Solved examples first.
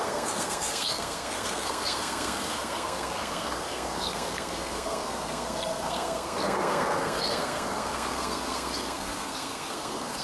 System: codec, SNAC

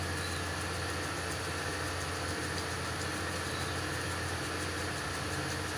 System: none